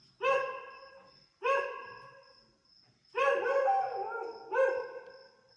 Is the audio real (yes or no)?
yes